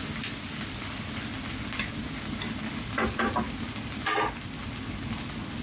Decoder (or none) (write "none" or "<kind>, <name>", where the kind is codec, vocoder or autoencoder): none